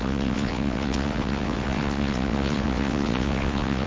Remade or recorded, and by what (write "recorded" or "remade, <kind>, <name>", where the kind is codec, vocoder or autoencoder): remade, vocoder, WaveNeXt